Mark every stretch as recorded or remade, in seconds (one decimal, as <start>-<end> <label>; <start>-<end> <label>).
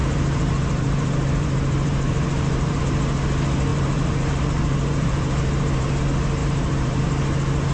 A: 0.0-2.8 remade; 2.8-3.7 recorded; 3.7-6.0 remade; 6.0-6.4 recorded; 6.4-7.0 remade; 7.0-7.7 recorded